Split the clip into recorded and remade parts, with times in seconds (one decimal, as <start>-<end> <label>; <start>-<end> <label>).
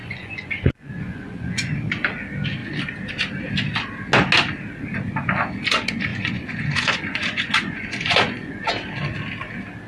0.0-1.7 remade; 1.7-6.1 recorded; 6.1-8.7 remade; 8.7-9.9 recorded